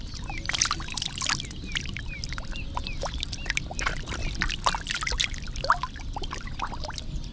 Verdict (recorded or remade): recorded